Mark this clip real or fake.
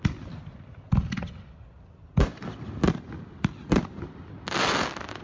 real